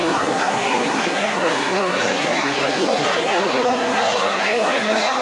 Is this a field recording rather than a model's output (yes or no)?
no